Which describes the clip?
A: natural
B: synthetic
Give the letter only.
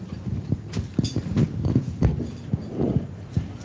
A